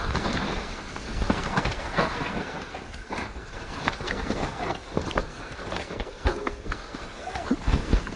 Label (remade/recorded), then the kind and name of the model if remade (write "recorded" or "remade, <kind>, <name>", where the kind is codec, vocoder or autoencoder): remade, codec, SNAC